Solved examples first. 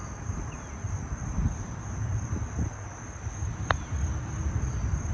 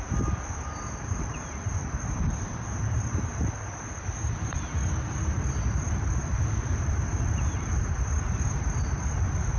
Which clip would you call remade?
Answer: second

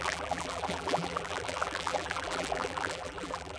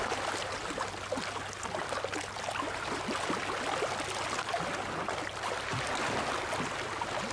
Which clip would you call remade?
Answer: first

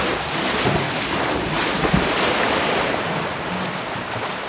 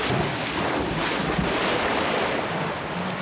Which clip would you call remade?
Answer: first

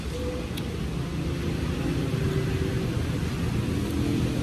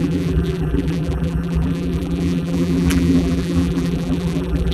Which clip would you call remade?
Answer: second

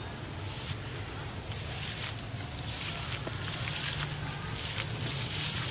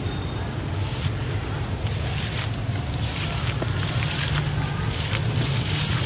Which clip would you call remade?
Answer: second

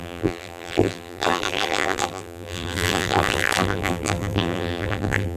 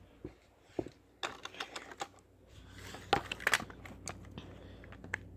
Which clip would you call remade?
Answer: first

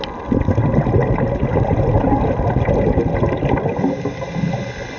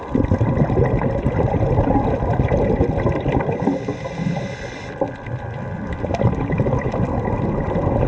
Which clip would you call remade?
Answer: second